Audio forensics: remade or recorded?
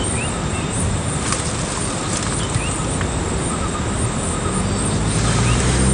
recorded